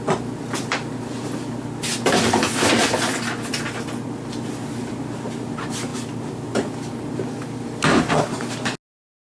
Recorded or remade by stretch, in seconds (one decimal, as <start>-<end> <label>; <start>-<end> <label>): 0.0-9.2 recorded